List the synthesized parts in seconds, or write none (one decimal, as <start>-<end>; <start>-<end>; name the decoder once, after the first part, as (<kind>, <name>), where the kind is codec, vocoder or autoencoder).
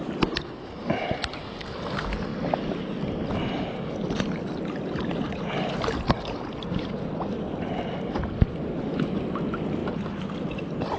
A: none